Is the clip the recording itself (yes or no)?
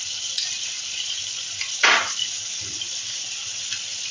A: yes